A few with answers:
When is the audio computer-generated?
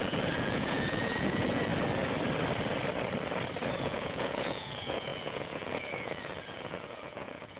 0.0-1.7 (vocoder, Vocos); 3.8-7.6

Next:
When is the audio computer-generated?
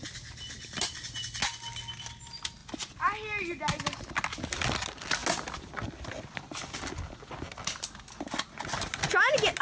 none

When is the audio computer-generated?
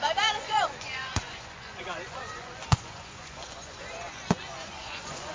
0.0-5.3 (vocoder, Vocos)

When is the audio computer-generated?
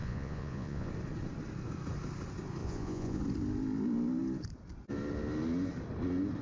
0.0-0.9 (vocoder, Vocos); 2.6-3.2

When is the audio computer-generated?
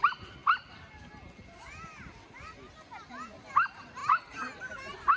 none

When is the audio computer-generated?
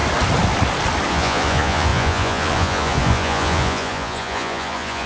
1.1-5.1 (vocoder, Vocos)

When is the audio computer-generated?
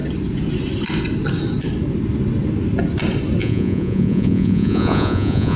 3.4-5.6 (vocoder, Vocos)